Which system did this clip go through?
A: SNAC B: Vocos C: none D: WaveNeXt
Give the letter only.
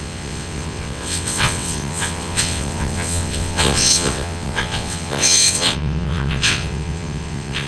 D